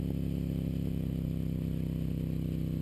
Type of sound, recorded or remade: recorded